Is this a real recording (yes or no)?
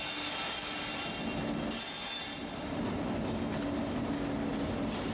yes